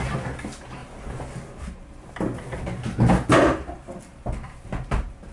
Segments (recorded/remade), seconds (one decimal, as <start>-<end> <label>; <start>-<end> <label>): 0.0-5.3 recorded